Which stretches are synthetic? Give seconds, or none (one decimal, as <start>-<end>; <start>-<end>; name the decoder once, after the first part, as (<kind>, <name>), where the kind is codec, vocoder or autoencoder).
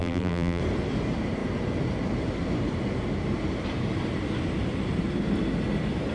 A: 0.0-0.6 (vocoder, BigVGAN v2)